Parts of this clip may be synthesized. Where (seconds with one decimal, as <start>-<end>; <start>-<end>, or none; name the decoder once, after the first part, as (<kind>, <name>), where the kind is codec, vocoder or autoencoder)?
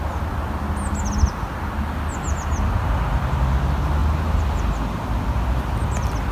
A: none